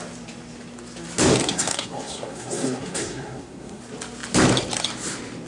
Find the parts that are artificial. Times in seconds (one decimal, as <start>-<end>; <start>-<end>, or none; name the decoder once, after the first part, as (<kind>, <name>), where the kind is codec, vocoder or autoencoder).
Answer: 1.4-3.8 (codec, SNAC)